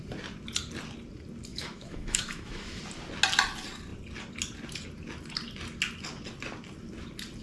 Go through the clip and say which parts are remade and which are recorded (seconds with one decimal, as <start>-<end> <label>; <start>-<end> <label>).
0.0-1.5 recorded; 1.5-2.8 remade; 2.8-7.4 recorded